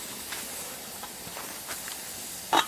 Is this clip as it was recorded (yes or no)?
yes